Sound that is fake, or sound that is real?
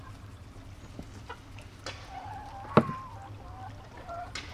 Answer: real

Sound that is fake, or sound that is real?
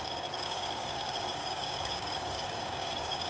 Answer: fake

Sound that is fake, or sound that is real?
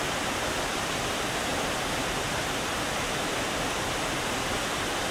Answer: fake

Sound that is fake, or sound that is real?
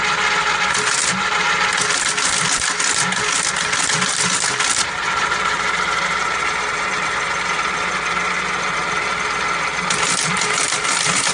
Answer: real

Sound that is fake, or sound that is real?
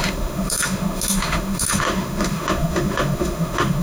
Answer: fake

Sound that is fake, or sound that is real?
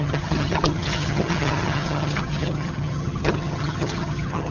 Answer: fake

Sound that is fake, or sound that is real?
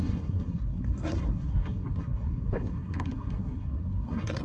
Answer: fake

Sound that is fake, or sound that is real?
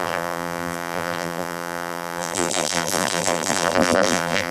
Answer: fake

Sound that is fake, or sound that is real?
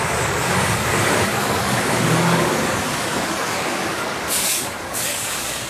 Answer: fake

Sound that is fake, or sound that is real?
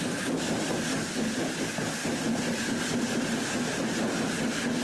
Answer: real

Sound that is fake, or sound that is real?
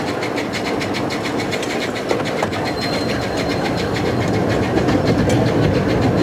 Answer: real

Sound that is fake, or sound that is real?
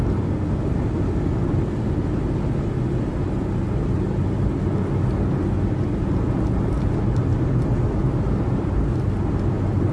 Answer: real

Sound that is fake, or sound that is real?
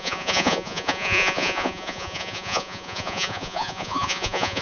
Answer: fake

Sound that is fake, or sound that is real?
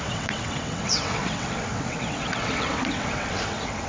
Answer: fake